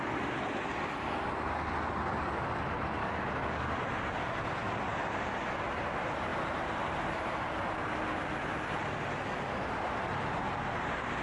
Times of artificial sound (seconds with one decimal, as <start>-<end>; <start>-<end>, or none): 3.0-3.8